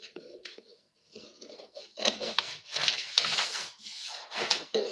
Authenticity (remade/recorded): remade